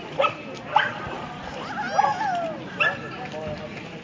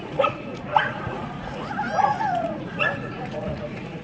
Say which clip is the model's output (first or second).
second